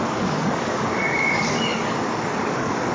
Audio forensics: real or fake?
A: fake